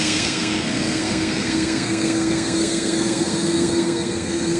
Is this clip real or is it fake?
fake